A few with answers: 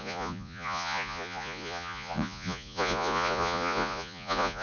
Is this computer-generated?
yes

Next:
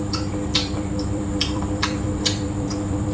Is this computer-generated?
yes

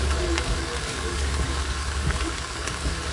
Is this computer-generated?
yes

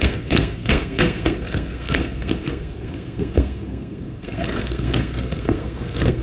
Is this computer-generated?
yes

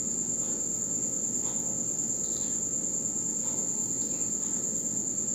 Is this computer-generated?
no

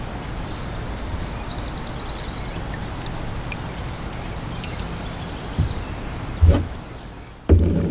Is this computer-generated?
no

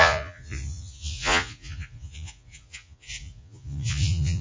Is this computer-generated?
yes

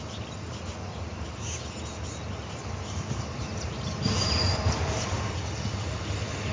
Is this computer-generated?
yes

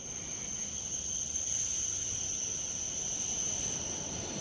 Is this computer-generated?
no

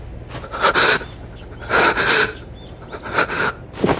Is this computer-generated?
no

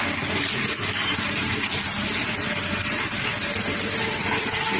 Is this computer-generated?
yes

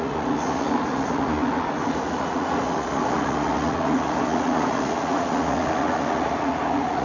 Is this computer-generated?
yes